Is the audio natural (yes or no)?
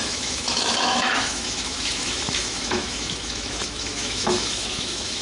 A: no